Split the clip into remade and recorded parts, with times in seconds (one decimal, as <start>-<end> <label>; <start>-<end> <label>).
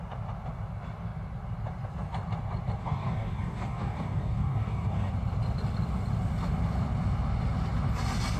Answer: 0.0-2.8 recorded; 2.8-5.1 remade; 5.1-8.4 recorded